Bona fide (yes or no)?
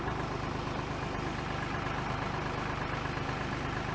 yes